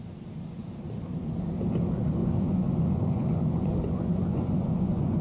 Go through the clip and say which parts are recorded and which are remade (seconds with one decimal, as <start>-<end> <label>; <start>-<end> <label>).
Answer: 0.0-2.2 recorded; 2.2-5.2 remade